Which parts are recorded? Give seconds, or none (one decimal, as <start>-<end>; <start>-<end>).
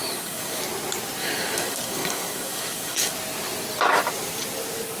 0.6-1.2; 3.1-5.0